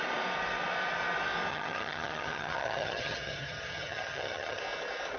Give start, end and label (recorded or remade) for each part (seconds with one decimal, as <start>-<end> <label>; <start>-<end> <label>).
0.0-1.5 recorded; 1.5-4.6 remade; 4.6-5.2 recorded